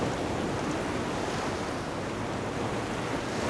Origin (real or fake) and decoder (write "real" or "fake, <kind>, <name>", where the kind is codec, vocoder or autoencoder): real